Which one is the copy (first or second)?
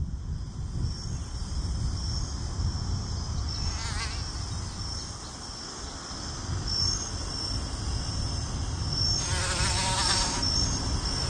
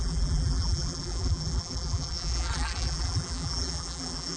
second